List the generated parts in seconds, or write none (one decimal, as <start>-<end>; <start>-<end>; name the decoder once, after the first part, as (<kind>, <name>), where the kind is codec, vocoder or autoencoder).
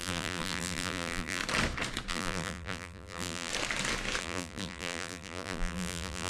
0.0-1.4 (vocoder, BigVGAN v2); 2.1-3.5; 4.2-6.3